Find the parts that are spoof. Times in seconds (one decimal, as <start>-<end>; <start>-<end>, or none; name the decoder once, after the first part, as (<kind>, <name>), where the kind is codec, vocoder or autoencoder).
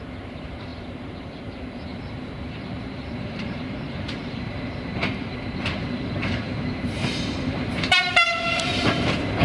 0.0-1.9 (vocoder, BigVGAN v2); 2.5-9.4